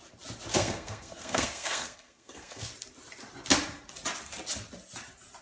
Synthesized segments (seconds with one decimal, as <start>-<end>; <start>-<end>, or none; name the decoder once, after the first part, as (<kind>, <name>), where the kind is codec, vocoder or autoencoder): 0.5-2.7 (codec, SNAC)